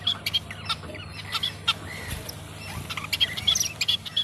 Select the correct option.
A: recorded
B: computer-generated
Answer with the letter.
B